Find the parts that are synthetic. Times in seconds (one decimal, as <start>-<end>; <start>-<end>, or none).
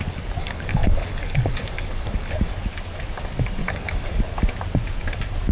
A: 0.4-2.5; 3.6-4.2